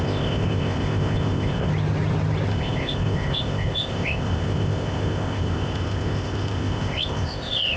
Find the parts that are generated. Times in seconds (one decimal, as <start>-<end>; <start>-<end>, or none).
0.0-1.7; 2.5-7.8